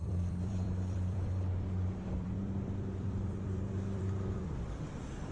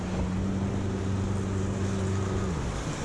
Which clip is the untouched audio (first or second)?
second